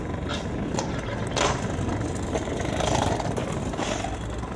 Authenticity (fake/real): real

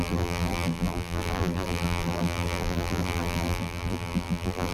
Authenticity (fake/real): fake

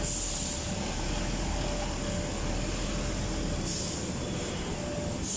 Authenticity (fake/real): real